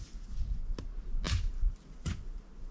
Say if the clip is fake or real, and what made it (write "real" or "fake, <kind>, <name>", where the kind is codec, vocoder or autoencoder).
real